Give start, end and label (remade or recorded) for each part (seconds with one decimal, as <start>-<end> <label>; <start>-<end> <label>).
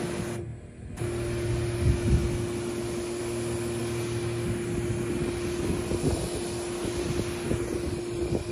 0.0-8.5 recorded